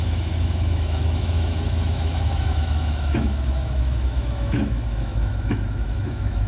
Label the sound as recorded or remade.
remade